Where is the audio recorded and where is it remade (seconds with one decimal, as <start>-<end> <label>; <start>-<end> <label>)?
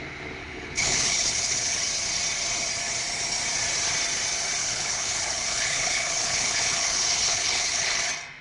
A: 0.0-0.4 recorded; 0.4-1.8 remade; 1.8-4.6 recorded; 4.6-8.0 remade; 8.0-8.4 recorded